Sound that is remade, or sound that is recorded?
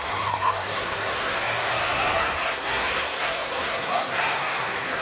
remade